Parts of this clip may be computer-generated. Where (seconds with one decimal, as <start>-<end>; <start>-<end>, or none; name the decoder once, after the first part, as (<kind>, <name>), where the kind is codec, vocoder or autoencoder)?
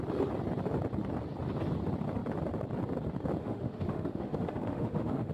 3.4-5.3 (autoencoder, DAC-VAE)